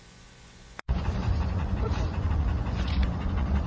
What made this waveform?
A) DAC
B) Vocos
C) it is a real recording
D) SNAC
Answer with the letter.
B